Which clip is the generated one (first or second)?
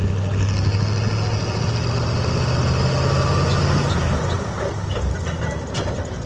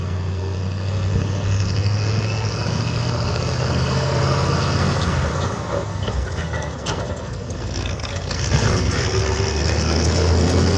second